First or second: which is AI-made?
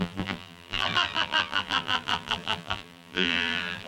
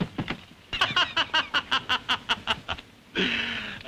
first